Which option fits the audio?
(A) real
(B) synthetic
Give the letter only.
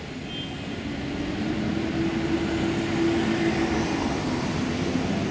A